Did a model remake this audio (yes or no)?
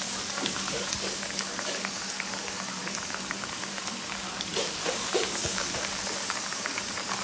yes